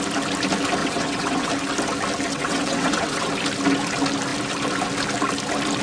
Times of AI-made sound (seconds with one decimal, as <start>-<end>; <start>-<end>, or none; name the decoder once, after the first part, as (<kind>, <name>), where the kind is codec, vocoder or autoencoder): 0.8-1.5 (vocoder, WaveNeXt); 2.3-3.3